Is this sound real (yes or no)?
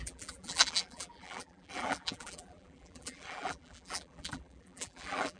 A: no